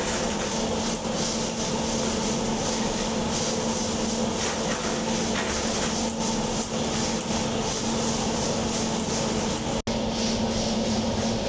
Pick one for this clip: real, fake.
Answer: real